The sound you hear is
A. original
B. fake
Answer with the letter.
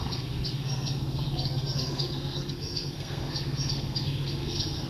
B